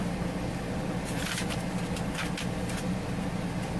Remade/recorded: recorded